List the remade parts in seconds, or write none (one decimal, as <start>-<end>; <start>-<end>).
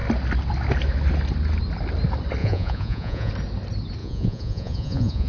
2.4-3.3; 4.0-5.3